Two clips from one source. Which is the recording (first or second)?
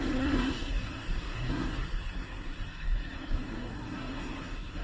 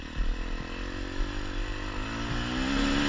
second